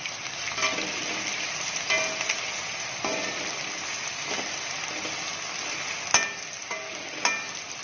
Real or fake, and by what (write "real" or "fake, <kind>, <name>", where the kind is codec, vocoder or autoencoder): real